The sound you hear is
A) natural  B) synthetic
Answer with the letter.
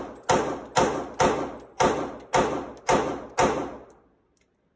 A